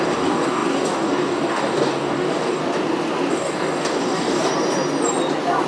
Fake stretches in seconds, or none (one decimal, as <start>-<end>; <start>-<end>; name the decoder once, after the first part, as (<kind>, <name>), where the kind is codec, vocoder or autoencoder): 0.0-2.6 (codec, DAC); 3.3-4.5